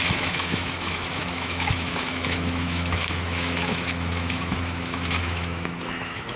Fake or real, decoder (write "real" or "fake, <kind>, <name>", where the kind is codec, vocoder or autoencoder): fake, autoencoder, DAC-VAE